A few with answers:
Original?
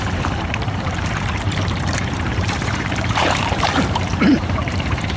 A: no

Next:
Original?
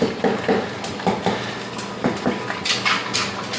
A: yes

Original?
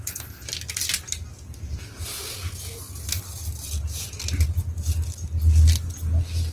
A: yes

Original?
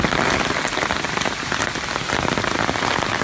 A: yes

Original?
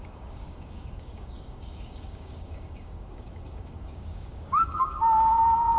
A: no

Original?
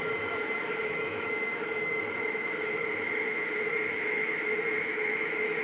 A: no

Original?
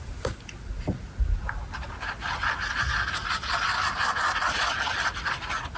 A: yes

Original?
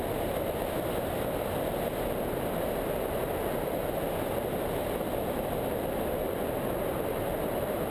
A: yes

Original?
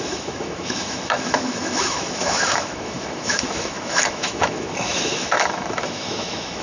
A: no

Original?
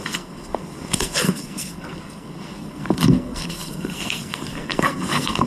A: no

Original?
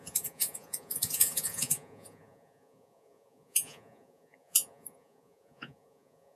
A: no